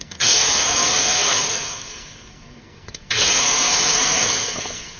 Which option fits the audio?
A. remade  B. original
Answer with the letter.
A